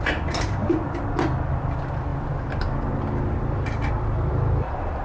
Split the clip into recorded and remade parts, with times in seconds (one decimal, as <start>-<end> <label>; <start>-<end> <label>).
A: 0.0-0.6 remade; 0.6-1.5 recorded; 1.5-5.0 remade